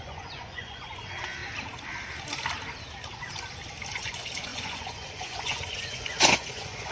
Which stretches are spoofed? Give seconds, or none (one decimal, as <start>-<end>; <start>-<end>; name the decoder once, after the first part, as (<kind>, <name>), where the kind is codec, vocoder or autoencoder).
0.0-1.4 (vocoder, Vocos); 3.9-6.9